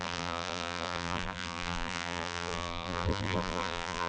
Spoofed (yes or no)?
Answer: yes